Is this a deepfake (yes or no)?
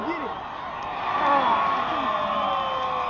no